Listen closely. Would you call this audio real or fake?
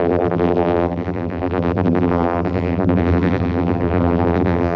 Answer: fake